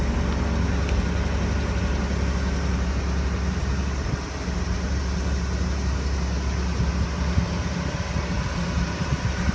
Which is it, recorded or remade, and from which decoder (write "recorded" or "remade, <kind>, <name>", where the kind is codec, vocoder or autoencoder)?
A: recorded